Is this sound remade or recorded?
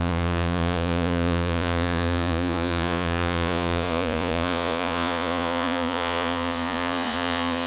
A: remade